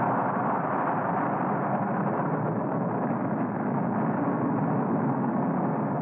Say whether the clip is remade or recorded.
recorded